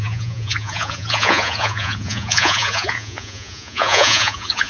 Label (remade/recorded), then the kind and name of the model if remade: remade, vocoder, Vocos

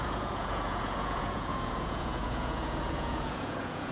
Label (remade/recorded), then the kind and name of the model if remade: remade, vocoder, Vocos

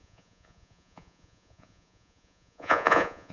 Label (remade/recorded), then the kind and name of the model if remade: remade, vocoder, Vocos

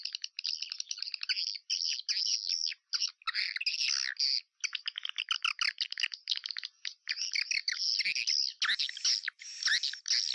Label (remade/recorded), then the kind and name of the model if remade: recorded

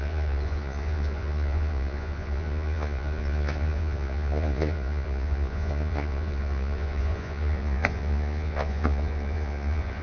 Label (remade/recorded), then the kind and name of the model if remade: remade, vocoder, Vocos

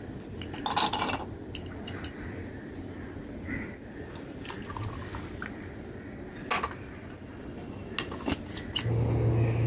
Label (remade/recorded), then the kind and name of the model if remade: recorded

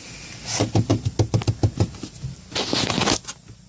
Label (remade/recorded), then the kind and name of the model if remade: recorded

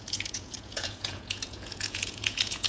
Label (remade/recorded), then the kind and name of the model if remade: remade, vocoder, Vocos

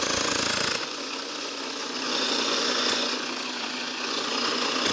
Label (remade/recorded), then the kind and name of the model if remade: remade, vocoder, Vocos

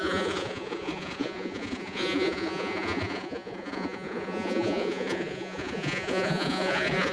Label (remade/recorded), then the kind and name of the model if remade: remade, vocoder, Vocos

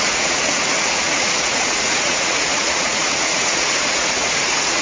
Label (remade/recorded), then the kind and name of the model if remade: remade, vocoder, Vocos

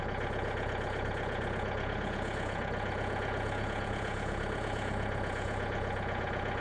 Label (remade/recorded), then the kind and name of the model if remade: remade, vocoder, Vocos